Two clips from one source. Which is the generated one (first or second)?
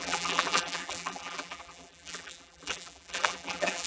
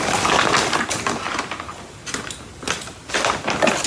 first